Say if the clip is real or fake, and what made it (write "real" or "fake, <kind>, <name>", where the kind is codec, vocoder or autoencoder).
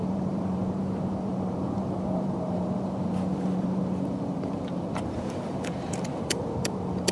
fake, vocoder, BigVGAN v2